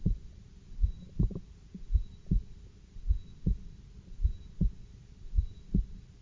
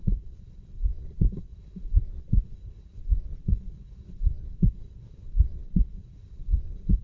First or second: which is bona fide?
first